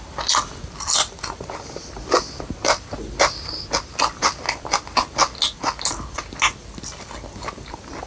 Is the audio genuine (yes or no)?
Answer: yes